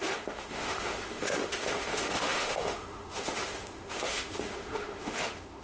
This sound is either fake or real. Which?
fake